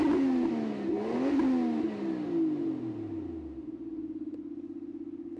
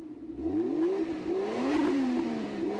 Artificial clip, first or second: second